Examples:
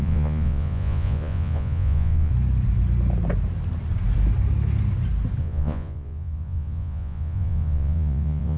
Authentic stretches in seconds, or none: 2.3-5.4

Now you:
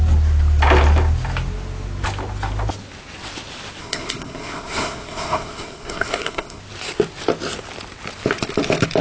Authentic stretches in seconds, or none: 0.0-3.8; 6.6-9.0

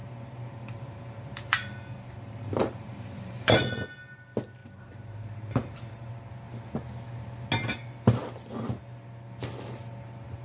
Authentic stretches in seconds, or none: 3.6-4.6; 6.1-10.4

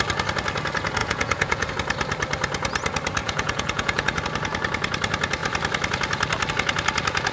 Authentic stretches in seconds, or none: 0.0-1.0; 1.7-3.2; 4.2-7.3

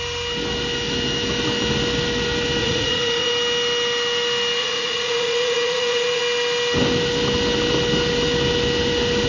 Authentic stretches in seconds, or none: 0.0-2.6; 3.3-4.6; 6.2-9.3

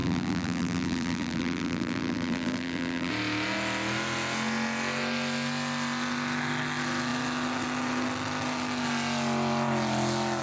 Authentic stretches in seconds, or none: 3.1-10.4